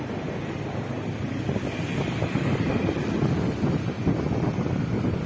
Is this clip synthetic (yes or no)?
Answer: no